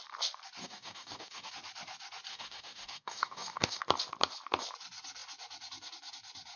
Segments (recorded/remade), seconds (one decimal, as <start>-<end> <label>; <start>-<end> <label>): 0.0-0.6 recorded; 0.6-1.5 remade; 1.5-2.3 recorded; 2.3-3.8 remade; 3.8-6.6 recorded